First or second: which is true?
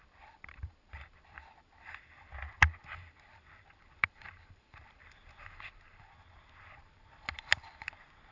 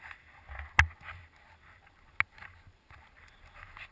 second